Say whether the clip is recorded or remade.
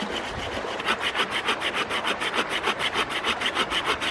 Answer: recorded